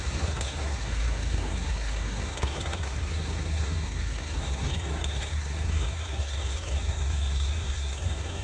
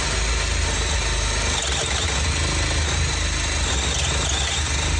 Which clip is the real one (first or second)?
second